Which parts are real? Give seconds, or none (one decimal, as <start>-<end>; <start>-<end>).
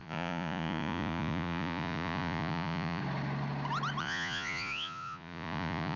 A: 3.0-4.0